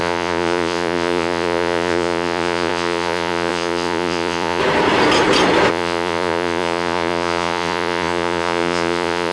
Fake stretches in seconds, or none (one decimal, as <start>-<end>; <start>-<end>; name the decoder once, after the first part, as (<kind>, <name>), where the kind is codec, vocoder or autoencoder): 0.0-4.6 (vocoder, Vocos); 5.7-9.3